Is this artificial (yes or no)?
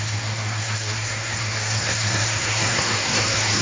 yes